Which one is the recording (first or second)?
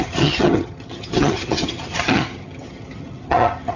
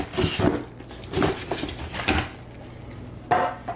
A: second